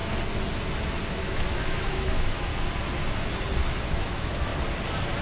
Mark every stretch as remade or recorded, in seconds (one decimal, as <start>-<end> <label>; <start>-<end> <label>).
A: 0.0-1.1 recorded; 1.1-2.5 remade; 2.5-3.9 recorded; 3.9-4.5 remade; 4.5-5.2 recorded